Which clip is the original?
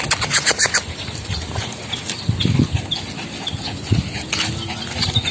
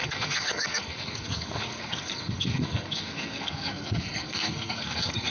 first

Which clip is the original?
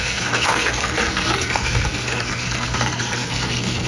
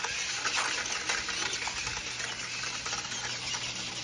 second